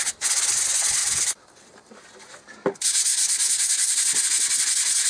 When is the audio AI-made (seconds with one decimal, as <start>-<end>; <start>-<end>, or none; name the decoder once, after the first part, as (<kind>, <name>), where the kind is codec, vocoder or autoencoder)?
1.0-1.9 (vocoder, BigVGAN v2)